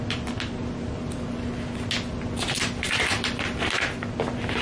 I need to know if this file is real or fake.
real